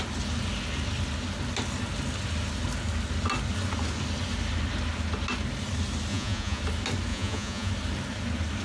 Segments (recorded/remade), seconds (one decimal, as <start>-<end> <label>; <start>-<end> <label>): 0.0-6.1 recorded; 6.1-6.6 remade; 6.6-7.1 recorded; 7.1-7.7 remade; 7.7-8.6 recorded